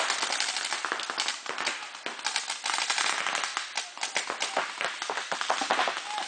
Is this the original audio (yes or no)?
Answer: yes